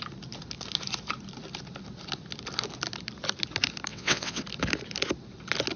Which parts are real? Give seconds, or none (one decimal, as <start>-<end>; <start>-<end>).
0.0-3.9; 4.4-5.8